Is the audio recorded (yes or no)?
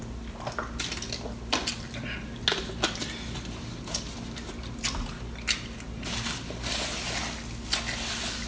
yes